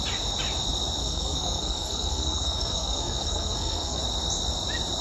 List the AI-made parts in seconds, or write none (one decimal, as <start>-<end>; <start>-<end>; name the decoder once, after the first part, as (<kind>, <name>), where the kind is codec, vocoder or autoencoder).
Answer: 1.0-4.0 (codec, SNAC)